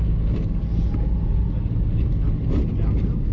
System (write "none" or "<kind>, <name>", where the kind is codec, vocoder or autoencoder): none